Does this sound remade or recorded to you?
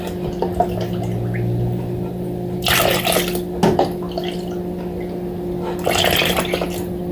recorded